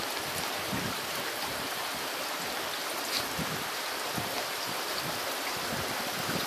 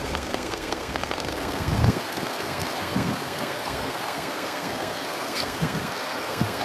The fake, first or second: second